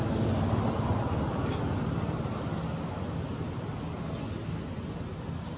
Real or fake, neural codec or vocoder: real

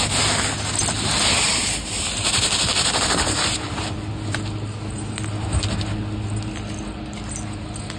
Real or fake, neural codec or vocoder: real